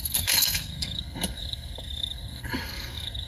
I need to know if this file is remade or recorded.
remade